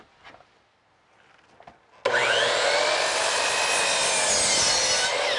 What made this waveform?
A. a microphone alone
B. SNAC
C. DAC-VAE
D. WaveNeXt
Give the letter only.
A